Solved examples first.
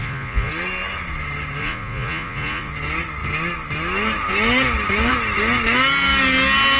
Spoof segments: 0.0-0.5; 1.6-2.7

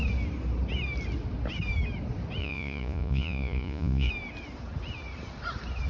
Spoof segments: 2.4-4.1

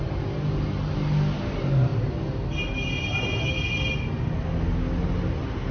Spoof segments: none

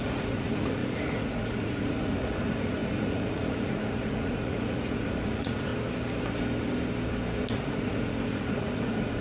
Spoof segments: 0.0-5.7; 7.5-9.2